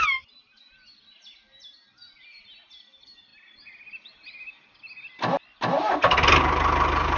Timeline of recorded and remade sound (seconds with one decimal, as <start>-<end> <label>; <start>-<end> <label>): 0.0-7.2 recorded